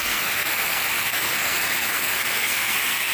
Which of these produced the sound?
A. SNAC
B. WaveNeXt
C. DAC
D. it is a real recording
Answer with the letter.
A